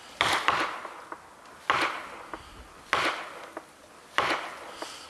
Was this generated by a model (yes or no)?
no